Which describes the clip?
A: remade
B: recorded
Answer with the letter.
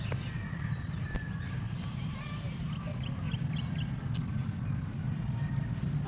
B